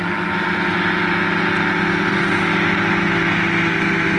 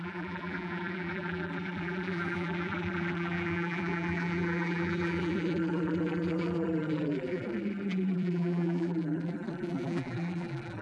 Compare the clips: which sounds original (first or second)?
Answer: first